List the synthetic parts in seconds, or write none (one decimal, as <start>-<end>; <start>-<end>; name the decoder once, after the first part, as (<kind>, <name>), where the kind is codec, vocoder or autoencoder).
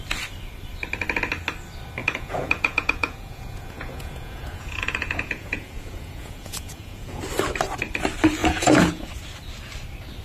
2.0-7.2 (vocoder, Vocos); 8.4-9.1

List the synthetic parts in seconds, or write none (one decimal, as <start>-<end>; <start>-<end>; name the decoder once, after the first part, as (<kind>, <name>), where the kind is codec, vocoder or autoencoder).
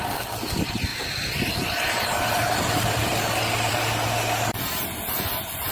none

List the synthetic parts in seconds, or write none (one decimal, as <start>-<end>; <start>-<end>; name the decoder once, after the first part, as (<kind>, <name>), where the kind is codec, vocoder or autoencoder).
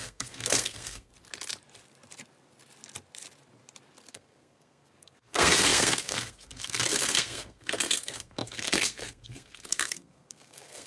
0.0-1.1 (codec, SNAC); 4.1-10.9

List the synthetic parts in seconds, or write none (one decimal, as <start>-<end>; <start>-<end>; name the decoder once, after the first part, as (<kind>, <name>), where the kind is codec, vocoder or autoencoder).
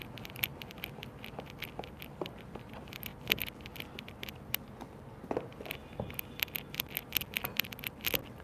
none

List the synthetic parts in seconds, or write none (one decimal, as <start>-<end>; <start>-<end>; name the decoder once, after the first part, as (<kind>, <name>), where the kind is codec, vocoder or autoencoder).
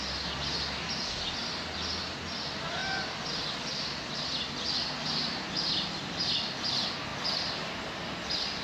2.8-3.4 (vocoder, BigVGAN v2); 7.1-8.1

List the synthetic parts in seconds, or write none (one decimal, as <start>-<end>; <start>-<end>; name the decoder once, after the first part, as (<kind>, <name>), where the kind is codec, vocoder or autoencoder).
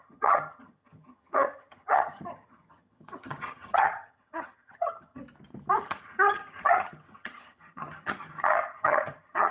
0.0-5.2 (vocoder, HiFi-GAN); 5.8-9.5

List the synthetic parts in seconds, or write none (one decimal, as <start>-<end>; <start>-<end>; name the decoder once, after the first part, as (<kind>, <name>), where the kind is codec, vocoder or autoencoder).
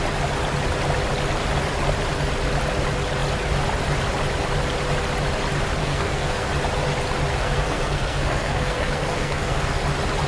5.8-6.5 (codec, SNAC); 7.3-9.8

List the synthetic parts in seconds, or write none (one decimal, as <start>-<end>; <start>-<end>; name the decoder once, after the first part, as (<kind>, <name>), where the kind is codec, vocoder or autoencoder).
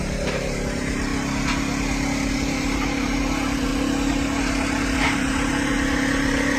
0.0-1.1 (vocoder, BigVGAN v2); 2.3-3.7; 4.4-6.6